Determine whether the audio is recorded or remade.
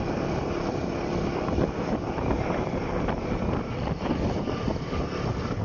remade